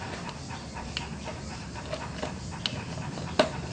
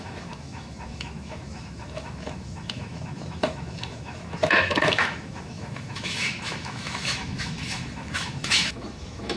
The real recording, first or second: first